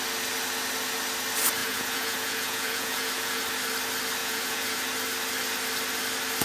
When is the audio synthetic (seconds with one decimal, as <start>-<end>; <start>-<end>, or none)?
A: 1.6-3.4; 4.2-4.8

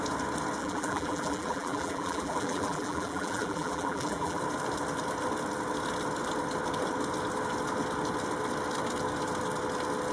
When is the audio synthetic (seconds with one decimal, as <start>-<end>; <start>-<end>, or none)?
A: 0.6-4.4

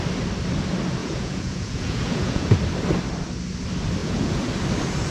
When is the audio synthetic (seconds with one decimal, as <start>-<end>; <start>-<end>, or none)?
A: 1.0-2.5; 4.0-4.5

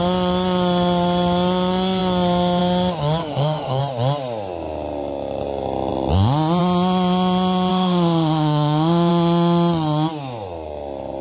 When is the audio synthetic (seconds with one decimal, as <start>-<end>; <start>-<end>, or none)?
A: 3.2-3.8; 7.7-9.1

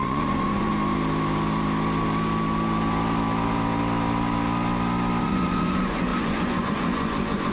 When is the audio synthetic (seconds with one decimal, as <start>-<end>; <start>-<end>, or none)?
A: 0.0-0.7; 5.2-7.5

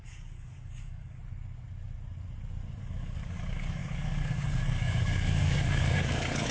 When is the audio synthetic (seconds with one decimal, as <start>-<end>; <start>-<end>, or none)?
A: 0.0-1.2; 2.8-6.5